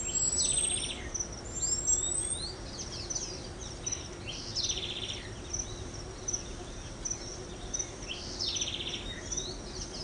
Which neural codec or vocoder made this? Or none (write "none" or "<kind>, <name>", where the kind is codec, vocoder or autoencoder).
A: none